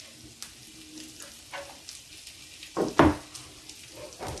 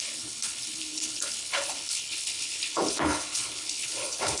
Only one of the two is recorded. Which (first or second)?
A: first